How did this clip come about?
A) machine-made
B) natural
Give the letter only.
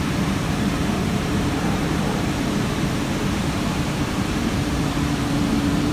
A